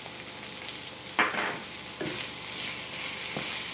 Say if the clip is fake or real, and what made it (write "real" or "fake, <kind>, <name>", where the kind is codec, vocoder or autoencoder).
real